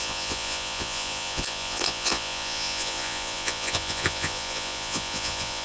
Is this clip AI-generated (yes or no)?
yes